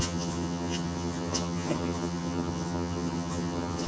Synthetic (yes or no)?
yes